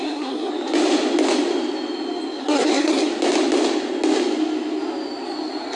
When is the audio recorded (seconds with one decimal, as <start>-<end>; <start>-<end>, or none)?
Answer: 0.5-2.4; 3.1-5.8